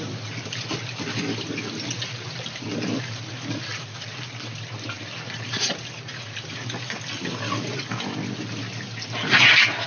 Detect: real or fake real